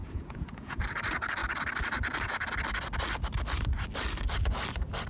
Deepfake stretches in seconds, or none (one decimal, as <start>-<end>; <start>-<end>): 0.0-0.8